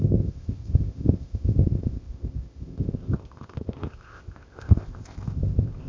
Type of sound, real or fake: fake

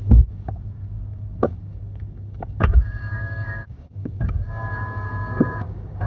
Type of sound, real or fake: fake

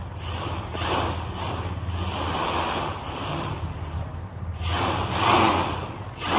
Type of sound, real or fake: real